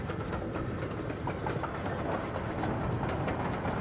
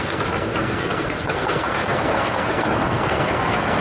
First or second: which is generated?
second